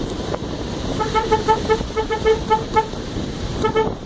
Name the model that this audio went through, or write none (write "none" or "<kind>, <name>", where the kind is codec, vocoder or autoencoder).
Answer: vocoder, BigVGAN v2